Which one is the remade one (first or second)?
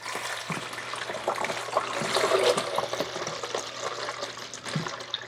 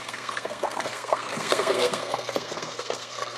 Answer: second